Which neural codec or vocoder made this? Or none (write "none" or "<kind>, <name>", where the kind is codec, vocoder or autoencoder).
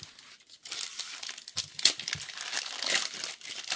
none